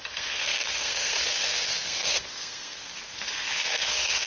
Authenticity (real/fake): fake